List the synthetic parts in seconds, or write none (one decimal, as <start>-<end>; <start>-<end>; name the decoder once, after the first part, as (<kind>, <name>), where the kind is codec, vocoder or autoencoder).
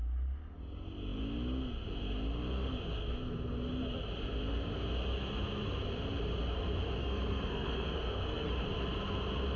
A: 7.0-8.5 (codec, SNAC)